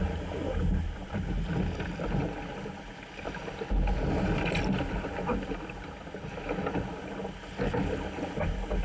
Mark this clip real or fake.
real